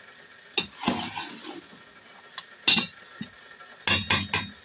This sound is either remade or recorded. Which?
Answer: recorded